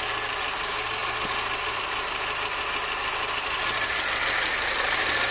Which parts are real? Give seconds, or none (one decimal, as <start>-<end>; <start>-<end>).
0.0-5.3